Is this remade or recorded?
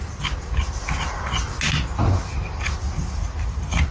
recorded